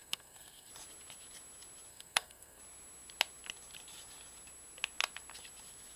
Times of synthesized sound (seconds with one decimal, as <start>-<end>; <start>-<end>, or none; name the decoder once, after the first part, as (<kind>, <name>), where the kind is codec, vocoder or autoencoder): 0.0-0.7 (codec, SNAC); 1.9-2.6